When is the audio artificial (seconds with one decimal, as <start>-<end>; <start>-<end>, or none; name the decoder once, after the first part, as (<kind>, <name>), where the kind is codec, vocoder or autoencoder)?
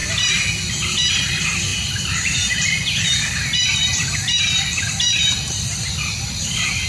1.7-4.9 (vocoder, BigVGAN v2)